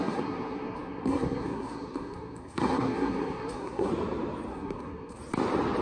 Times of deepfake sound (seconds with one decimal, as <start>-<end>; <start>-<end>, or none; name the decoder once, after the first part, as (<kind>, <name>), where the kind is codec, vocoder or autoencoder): 0.0-3.9 (codec, SNAC); 4.5-5.2